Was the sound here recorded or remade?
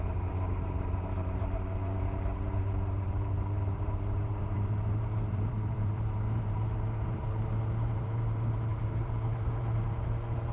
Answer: remade